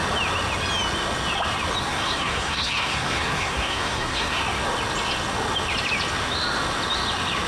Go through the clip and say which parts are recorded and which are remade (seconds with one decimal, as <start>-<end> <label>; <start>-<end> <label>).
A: 0.0-1.8 recorded; 1.8-4.4 remade; 4.4-7.5 recorded